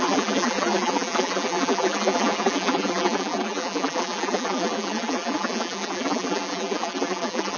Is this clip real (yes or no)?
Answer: no